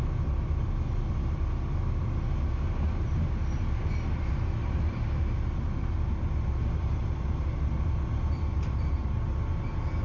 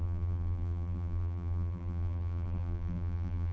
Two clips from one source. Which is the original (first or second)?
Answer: first